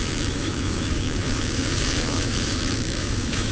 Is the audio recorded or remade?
remade